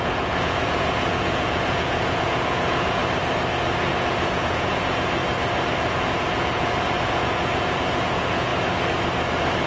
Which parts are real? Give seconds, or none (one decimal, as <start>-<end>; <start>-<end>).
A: 3.0-3.8; 5.2-5.9; 8.5-9.7